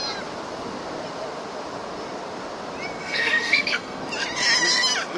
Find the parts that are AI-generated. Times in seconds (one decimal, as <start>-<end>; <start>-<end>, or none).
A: 3.0-4.0